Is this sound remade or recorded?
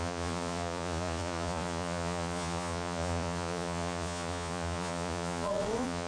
remade